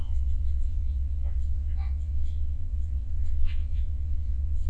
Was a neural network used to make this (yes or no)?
yes